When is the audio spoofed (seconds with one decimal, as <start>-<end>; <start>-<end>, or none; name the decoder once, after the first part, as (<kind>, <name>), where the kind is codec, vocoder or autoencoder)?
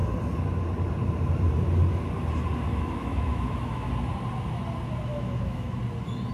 2.7-3.9 (autoencoder, DAC-VAE); 5.1-5.8